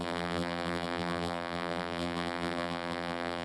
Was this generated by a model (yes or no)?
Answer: yes